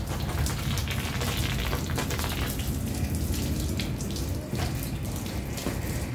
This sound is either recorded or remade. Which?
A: recorded